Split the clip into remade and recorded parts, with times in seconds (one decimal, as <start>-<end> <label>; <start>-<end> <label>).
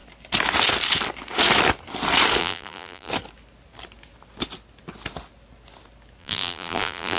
0.0-2.4 recorded; 2.4-3.1 remade; 3.1-6.2 recorded; 6.2-7.2 remade